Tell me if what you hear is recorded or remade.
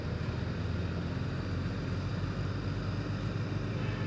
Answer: recorded